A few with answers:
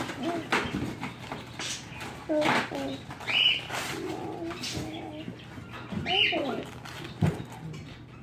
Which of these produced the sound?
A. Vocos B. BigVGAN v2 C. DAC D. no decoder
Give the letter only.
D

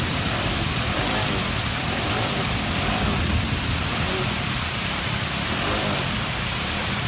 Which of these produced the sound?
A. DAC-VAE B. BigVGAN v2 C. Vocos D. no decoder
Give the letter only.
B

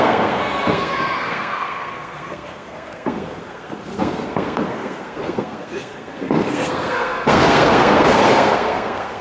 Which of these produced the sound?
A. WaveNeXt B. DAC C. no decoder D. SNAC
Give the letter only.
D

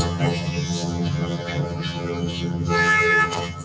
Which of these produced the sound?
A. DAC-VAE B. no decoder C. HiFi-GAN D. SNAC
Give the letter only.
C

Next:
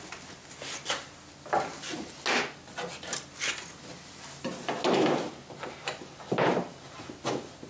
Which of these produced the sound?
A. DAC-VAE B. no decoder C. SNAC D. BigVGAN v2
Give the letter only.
B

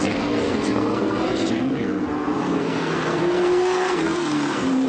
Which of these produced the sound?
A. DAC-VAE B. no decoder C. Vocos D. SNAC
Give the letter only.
D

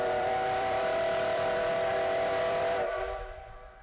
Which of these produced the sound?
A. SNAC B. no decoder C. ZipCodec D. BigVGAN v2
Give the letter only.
D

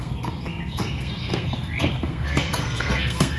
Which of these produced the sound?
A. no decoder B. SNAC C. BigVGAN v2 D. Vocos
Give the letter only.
B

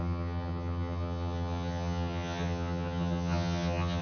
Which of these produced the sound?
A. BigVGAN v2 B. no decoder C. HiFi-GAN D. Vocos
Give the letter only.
C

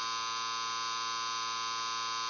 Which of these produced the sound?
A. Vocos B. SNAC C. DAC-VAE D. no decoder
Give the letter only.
D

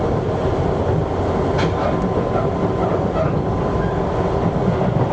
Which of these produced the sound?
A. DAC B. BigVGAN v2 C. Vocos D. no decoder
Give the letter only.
D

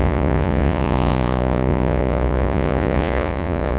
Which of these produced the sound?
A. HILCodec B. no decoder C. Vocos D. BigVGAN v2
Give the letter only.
C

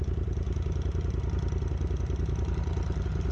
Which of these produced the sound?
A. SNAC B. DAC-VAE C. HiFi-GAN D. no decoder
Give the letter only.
D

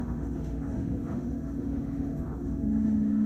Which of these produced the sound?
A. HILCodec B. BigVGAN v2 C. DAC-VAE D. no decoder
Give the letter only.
C